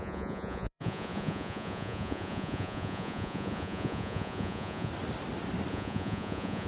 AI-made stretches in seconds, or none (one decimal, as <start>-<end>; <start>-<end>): 0.0-4.9; 5.7-6.7